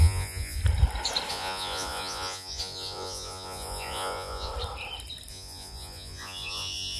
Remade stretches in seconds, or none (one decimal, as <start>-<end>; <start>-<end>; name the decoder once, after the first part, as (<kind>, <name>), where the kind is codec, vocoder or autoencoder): 0.0-0.6 (vocoder, Vocos); 1.3-4.5; 5.3-7.0